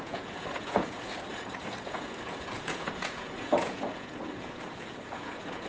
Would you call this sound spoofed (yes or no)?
yes